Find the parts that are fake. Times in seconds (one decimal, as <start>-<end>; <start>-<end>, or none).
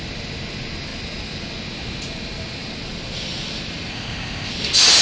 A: 3.9-4.5